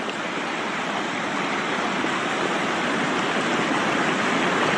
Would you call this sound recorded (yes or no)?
yes